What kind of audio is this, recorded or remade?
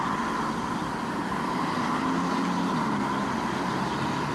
recorded